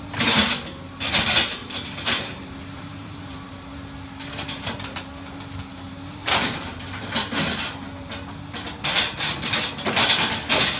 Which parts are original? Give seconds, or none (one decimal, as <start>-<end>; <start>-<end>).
0.0-1.6; 3.5-6.2; 7.1-10.8